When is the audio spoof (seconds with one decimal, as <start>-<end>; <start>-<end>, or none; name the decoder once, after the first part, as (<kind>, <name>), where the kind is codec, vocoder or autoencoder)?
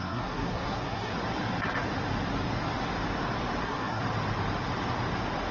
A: 0.0-1.1 (codec, SNAC); 3.6-4.0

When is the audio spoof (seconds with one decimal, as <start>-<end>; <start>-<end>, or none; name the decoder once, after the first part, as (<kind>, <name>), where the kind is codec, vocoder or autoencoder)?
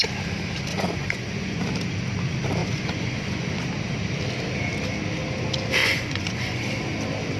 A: 0.7-1.6 (vocoder, Vocos); 2.6-3.5; 5.8-6.7